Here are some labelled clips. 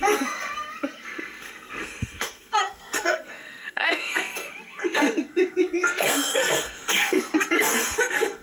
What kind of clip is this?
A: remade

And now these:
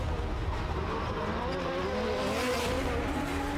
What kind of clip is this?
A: recorded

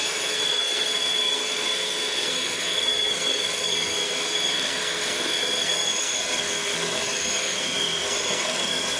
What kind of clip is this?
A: remade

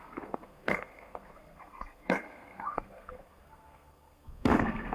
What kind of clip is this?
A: remade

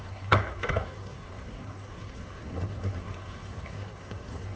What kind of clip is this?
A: remade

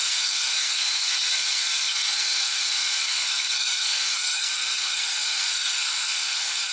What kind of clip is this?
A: remade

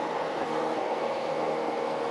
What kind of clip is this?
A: remade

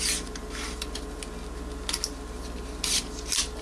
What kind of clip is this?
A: recorded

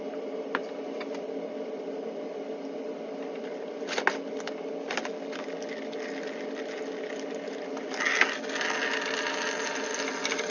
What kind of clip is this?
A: recorded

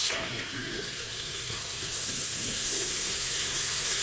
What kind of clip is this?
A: remade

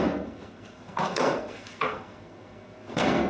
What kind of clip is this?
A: remade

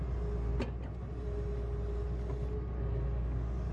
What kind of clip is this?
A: recorded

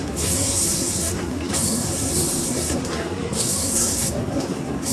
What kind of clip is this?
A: remade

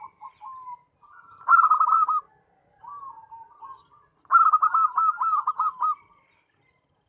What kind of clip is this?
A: recorded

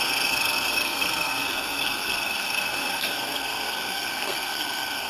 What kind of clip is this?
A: remade